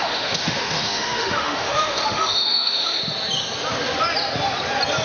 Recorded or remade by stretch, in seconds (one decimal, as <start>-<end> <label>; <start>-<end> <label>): 0.0-3.0 remade; 3.0-5.0 recorded